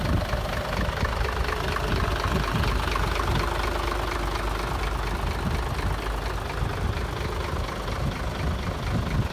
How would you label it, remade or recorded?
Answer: recorded